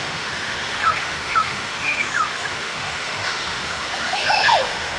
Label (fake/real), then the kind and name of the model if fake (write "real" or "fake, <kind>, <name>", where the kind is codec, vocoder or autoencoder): fake, autoencoder, DAC-VAE